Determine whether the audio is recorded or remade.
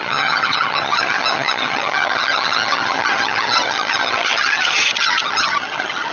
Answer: remade